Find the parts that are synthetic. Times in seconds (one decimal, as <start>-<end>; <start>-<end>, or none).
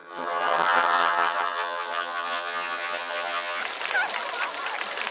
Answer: 0.0-3.6